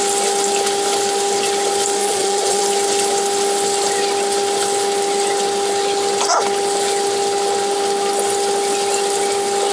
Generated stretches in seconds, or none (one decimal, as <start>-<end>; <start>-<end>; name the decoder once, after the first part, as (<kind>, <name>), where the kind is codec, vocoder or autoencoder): 2.0-2.6 (vocoder, Vocos)